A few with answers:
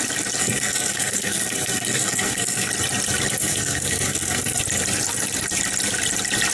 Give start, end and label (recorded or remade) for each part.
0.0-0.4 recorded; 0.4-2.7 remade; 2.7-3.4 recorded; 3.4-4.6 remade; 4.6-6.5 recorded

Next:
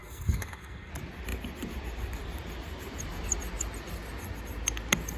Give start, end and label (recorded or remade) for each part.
0.0-0.9 remade; 0.9-5.2 recorded

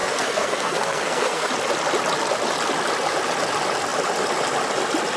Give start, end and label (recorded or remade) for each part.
0.0-1.5 remade; 1.5-5.2 recorded

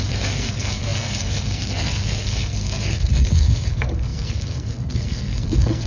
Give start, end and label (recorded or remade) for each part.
0.0-5.9 remade

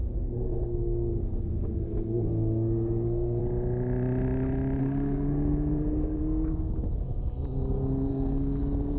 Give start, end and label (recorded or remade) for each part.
0.0-3.4 remade; 3.4-4.8 recorded; 4.8-6.2 remade; 6.2-8.1 recorded; 8.1-8.6 remade; 8.6-9.0 recorded

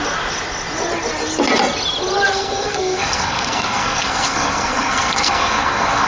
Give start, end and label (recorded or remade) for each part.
0.0-2.3 recorded; 2.3-6.1 remade

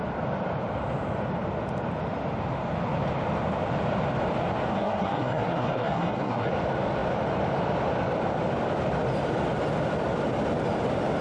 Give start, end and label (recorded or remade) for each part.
0.0-4.7 recorded; 4.7-6.5 remade; 6.5-11.2 recorded

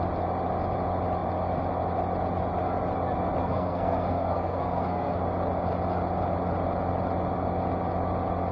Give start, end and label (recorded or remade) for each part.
0.0-3.4 recorded; 3.4-5.2 remade; 5.2-8.5 recorded